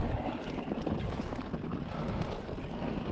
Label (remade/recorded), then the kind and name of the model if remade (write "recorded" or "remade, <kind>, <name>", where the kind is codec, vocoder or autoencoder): remade, vocoder, BigVGAN v2